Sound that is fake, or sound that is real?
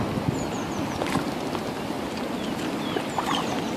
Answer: real